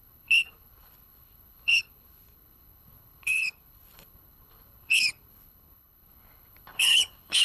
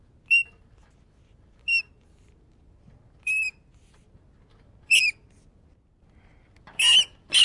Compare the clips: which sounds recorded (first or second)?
second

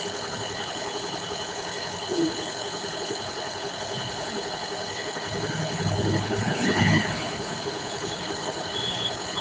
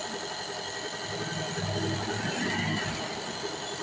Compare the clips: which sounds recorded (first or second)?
second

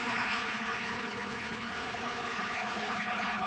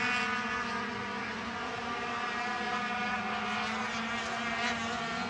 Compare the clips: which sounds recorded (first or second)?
second